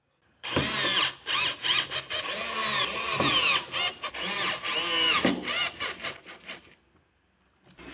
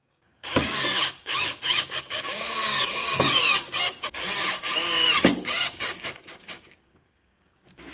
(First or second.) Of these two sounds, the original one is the first